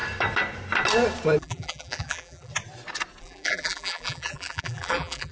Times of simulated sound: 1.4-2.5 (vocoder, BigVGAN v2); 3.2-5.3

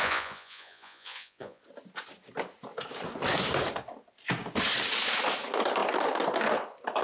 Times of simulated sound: 0.0-1.6 (vocoder, Vocos)

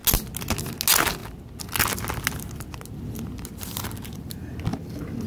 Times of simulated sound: none

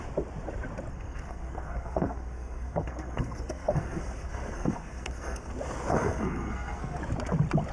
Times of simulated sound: 0.9-5.5 (codec, SNAC); 5.9-7.0

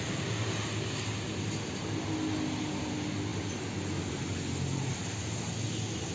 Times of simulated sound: none

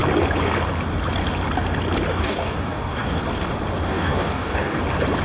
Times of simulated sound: 2.1-3.2 (codec, DAC); 3.9-4.8

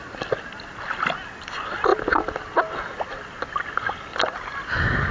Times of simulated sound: none

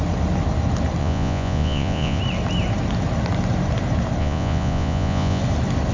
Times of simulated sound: 1.0-2.2 (vocoder, Vocos); 4.2-5.4